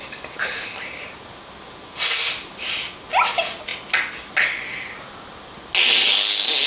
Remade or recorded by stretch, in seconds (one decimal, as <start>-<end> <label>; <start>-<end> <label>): 0.0-6.7 recorded